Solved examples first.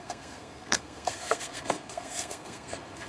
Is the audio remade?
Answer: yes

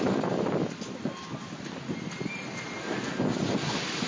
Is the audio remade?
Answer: no